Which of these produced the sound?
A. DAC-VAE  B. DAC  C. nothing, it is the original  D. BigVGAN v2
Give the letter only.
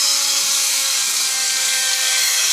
B